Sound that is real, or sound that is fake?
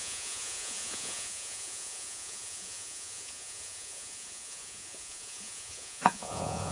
fake